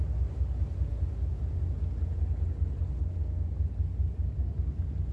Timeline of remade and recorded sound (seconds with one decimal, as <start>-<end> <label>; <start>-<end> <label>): 0.0-5.1 recorded